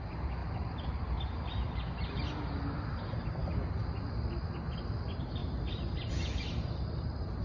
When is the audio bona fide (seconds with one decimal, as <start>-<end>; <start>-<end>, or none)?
0.0-7.4